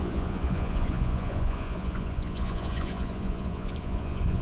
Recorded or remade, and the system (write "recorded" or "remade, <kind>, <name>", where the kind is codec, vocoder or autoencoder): remade, vocoder, Vocos